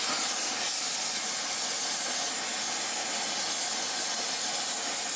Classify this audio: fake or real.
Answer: real